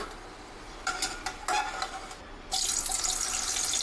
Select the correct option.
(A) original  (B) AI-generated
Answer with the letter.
A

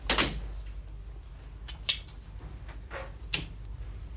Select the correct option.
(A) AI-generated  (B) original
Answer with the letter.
B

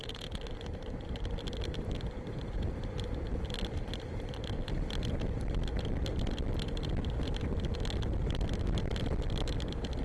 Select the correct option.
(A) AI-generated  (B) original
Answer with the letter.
B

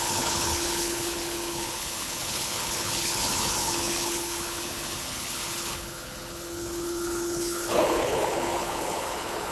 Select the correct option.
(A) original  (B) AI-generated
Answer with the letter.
B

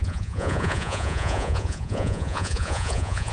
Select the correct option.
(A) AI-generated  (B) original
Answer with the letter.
A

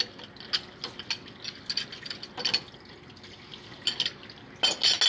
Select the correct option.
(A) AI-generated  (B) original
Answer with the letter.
B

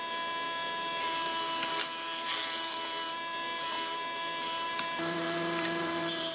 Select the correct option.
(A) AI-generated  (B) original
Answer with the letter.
A